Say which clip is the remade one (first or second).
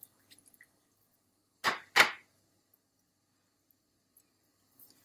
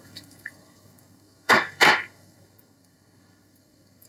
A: second